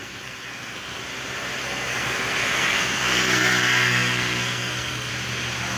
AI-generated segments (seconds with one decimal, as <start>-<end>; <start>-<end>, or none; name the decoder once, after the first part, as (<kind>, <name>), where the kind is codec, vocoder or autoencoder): 0.0-1.0 (codec, SNAC); 1.6-5.1